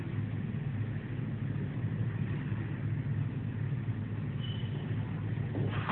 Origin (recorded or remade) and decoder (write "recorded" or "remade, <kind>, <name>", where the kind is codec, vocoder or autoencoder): recorded